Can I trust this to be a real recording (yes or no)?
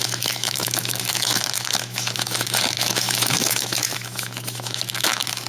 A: no